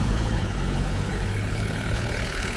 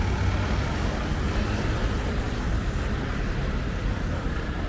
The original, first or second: second